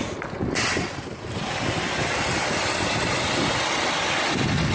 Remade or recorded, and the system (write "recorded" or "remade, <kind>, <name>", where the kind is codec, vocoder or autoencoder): recorded